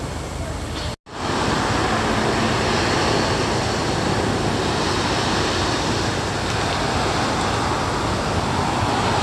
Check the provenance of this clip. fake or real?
real